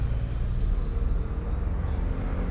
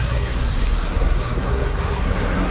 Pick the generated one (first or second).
second